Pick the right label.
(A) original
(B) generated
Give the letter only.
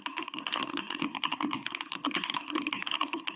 B